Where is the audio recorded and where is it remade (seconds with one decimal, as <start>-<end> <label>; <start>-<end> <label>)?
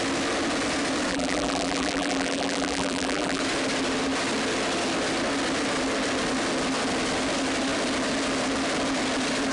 0.0-1.1 recorded; 1.1-3.4 remade; 3.4-9.5 recorded